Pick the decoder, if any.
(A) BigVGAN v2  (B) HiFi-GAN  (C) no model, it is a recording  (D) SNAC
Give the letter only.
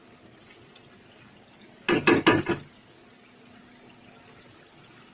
C